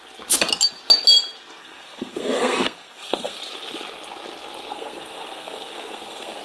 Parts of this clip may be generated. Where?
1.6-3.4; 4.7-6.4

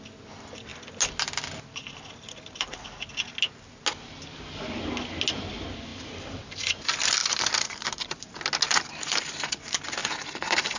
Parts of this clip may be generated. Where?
5.9-6.4; 7.2-8.3; 10.0-10.8

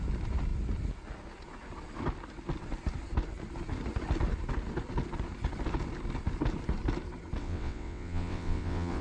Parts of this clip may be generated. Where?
7.4-9.0

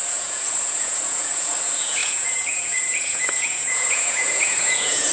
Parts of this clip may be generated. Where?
0.0-5.1